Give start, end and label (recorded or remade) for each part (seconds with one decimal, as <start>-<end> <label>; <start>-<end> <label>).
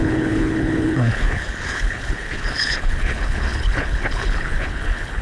0.0-5.2 remade